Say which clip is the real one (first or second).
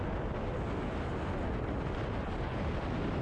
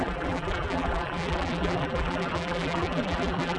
first